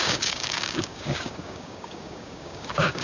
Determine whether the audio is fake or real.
fake